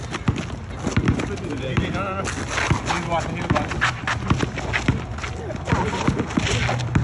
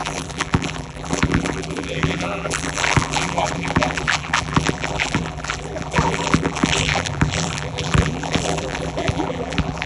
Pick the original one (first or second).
first